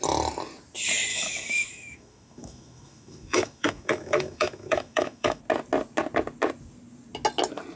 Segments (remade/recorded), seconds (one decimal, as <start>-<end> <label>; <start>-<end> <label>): 0.0-1.1 recorded; 1.1-5.4 remade; 5.4-7.8 recorded